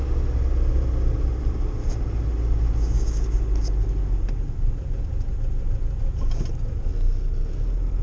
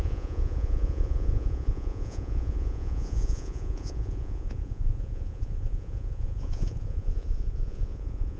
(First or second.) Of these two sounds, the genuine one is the first